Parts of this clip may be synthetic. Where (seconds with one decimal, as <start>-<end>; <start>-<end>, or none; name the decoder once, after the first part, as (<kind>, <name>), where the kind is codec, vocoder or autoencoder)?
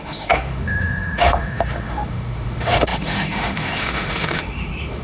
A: 0.0-5.0 (autoencoder, DAC-VAE)